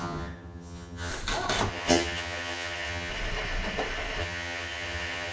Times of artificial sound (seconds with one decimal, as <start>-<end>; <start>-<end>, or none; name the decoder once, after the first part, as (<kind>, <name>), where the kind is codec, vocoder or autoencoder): 0.0-1.1 (vocoder, HiFi-GAN); 1.7-3.1; 4.2-5.3